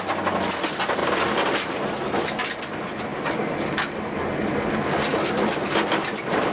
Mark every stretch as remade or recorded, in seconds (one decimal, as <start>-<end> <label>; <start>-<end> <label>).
0.0-5.1 recorded; 5.1-6.5 remade